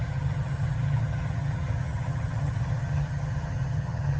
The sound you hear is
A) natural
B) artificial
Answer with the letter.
B